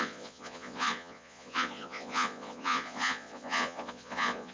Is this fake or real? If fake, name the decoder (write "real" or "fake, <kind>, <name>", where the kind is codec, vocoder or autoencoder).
fake, vocoder, Vocos